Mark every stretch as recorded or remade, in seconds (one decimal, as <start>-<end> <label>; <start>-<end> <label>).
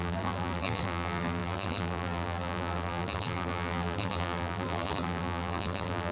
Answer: 0.0-6.1 remade